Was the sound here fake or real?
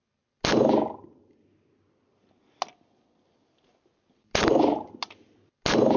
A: real